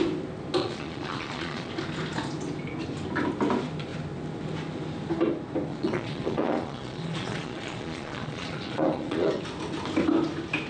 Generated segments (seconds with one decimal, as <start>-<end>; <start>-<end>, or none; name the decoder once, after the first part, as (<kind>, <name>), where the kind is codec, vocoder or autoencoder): 0.6-1.7 (vocoder, Vocos); 5.7-9.4